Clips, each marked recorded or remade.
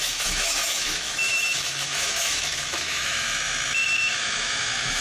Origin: remade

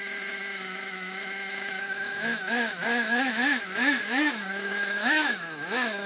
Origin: remade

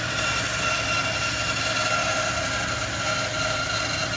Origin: recorded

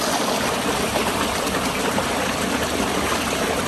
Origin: recorded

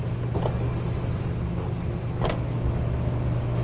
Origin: recorded